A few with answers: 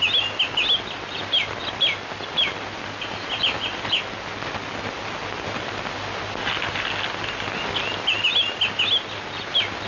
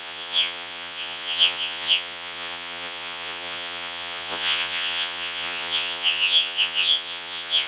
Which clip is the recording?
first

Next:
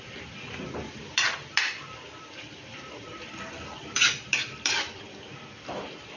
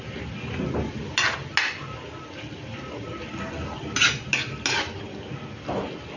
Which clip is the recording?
second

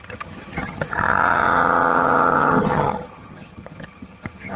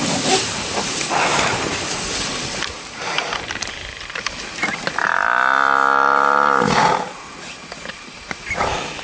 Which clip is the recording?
second